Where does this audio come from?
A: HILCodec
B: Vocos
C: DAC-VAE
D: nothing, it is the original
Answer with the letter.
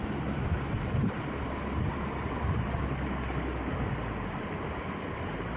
D